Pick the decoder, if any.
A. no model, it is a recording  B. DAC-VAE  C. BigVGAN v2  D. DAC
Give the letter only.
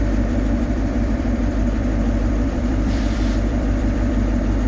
C